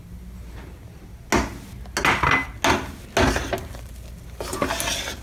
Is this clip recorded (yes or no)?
yes